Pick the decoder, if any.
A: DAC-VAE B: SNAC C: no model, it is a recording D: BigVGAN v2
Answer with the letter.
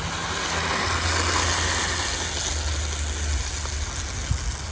C